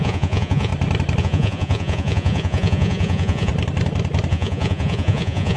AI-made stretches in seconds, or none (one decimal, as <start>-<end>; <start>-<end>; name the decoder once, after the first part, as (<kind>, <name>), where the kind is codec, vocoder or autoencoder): 0.0-0.7 (vocoder, Vocos); 1.2-3.5; 4.3-5.6